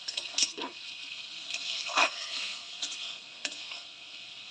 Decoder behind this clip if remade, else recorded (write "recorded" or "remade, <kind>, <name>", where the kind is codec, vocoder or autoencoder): remade, codec, SNAC